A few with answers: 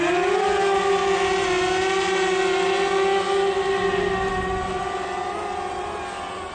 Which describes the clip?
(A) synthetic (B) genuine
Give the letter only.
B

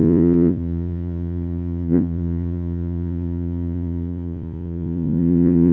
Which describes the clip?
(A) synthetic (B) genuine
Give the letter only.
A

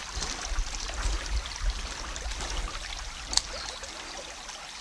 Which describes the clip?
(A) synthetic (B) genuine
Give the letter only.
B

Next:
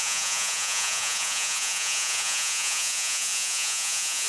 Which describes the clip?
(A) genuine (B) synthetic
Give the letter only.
B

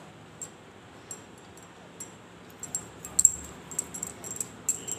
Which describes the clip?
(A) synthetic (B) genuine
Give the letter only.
B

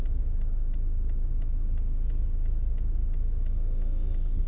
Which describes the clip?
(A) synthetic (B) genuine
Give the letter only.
B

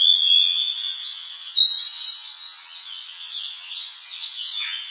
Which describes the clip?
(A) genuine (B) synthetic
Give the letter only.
B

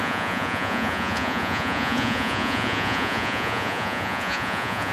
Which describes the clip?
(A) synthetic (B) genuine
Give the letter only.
A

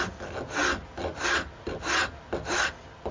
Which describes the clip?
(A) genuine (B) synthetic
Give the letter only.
A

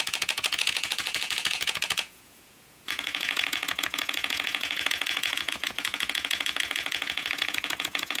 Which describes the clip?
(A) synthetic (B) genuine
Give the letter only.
A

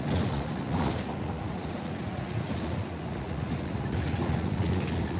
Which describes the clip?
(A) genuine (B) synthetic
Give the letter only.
B